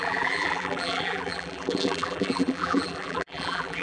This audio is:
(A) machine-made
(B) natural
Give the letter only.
A